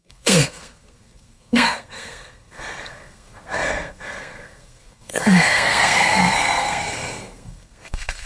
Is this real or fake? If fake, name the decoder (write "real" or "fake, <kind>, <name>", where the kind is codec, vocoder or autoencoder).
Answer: fake, codec, SNAC